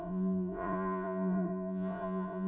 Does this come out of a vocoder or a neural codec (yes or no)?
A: yes